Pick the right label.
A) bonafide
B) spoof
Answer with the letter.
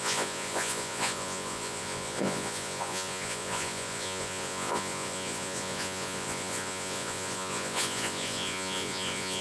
B